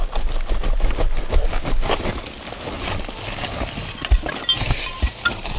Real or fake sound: real